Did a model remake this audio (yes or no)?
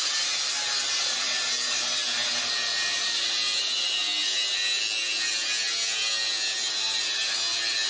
no